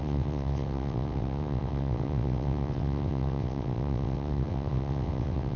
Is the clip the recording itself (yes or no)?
no